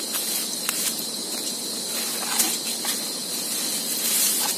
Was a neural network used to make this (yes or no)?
no